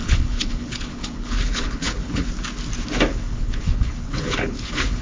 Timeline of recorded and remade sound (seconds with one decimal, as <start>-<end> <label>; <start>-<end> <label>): 0.0-2.3 remade; 2.3-3.1 recorded; 3.1-5.0 remade